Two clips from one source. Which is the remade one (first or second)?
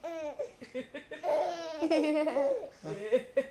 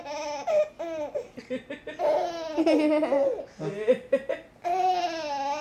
first